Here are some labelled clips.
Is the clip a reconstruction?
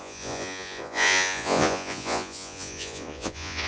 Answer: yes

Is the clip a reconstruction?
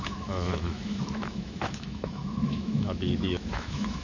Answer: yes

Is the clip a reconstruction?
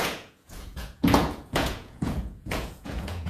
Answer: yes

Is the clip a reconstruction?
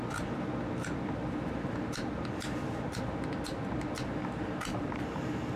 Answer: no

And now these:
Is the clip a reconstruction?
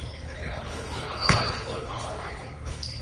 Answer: yes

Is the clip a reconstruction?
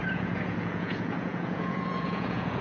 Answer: yes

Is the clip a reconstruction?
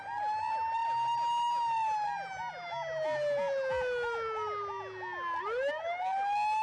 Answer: no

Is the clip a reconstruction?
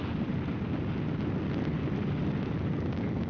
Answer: no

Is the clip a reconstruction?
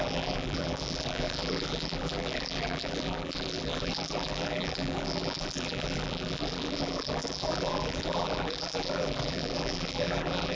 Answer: yes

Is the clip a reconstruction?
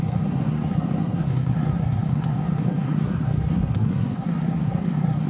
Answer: yes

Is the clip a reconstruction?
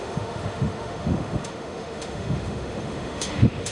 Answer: yes